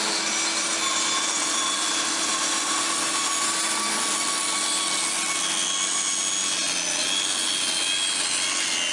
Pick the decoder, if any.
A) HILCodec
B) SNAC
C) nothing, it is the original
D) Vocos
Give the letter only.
C